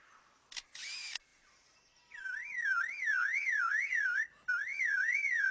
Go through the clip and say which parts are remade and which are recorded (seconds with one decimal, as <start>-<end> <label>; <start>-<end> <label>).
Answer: 0.0-3.1 recorded; 3.1-4.2 remade; 4.2-4.7 recorded; 4.7-5.5 remade